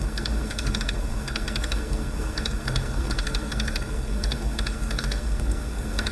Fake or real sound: fake